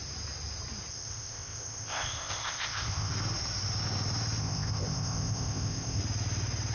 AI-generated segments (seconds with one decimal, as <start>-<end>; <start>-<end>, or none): 0.9-3.1; 4.4-6.0